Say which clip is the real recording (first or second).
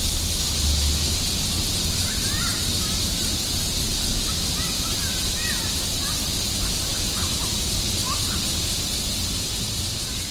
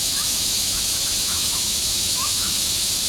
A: first